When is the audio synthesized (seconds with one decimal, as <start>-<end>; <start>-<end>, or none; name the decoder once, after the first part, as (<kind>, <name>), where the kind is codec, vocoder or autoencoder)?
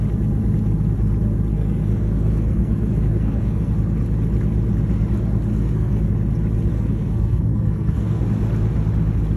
1.5-3.7 (codec, SNAC); 5.5-6.1; 6.7-8.2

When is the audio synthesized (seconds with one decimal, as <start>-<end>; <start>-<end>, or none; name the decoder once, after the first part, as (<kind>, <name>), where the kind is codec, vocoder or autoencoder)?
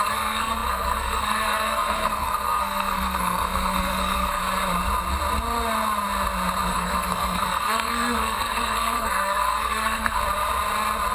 0.0-4.4 (codec, SNAC); 6.7-10.2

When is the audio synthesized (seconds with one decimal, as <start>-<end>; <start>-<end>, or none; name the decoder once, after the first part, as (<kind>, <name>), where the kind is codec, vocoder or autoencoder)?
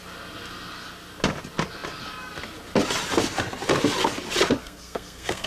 4.6-5.5 (codec, SNAC)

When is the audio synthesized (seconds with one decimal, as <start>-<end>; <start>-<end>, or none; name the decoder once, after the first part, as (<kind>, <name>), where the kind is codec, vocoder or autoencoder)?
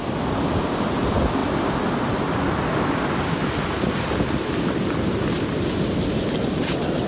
none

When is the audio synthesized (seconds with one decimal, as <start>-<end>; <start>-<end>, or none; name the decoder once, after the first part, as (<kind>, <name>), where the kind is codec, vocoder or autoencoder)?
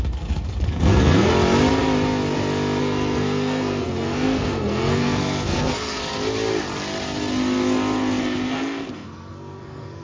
0.0-1.3 (codec, SNAC); 2.8-6.0; 8.2-10.0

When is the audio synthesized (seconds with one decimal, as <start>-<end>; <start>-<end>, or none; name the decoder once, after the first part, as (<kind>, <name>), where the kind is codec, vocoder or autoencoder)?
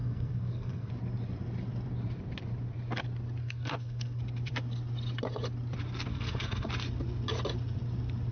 0.0-0.9 (codec, SNAC); 3.4-4.2; 6.1-6.7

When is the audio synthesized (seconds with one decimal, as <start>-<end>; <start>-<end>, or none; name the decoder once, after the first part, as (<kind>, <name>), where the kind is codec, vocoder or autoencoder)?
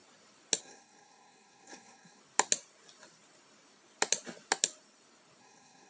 0.6-2.2 (codec, SNAC); 5.4-5.9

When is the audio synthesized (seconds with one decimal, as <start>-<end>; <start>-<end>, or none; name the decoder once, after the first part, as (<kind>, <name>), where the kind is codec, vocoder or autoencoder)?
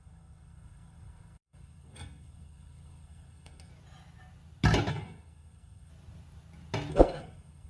0.0-3.7 (codec, SNAC); 4.9-5.9; 6.9-7.7